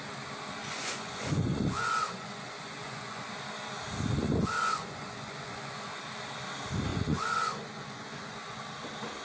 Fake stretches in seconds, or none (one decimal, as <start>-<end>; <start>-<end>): 0.6-3.3; 4.2-6.0; 6.9-8.6